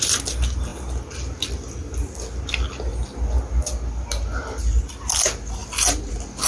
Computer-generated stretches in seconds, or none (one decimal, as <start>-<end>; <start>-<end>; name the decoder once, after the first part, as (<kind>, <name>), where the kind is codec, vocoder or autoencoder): none